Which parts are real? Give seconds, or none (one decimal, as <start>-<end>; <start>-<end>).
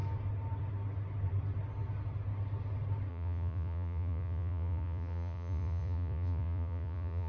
0.0-3.1